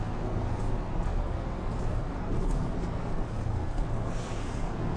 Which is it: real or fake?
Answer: fake